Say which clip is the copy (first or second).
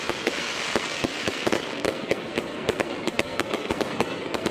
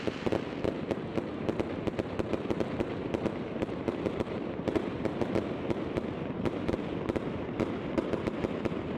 first